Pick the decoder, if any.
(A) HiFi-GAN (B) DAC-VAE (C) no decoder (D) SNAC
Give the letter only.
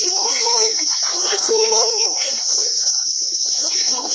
D